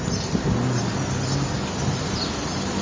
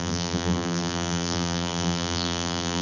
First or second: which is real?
first